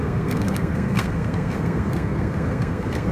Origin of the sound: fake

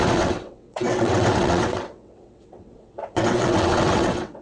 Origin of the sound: fake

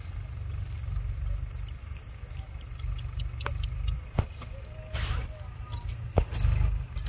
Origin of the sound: real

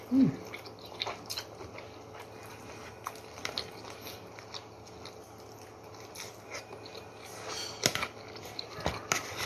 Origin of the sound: real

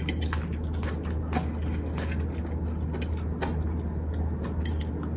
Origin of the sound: real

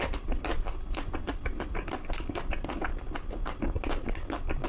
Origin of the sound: real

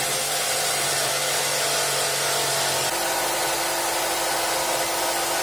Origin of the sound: real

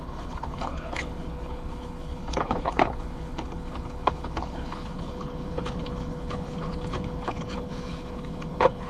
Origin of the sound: fake